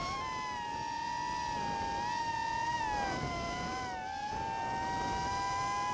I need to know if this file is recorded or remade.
recorded